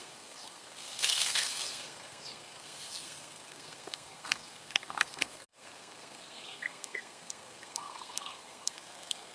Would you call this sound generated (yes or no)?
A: yes